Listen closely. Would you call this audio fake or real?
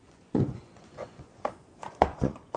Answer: fake